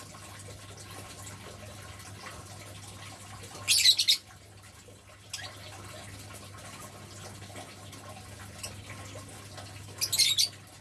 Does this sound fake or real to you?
real